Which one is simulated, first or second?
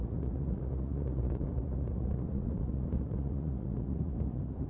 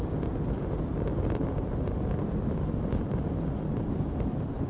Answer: first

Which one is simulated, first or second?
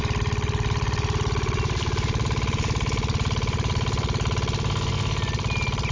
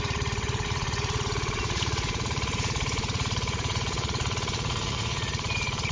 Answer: second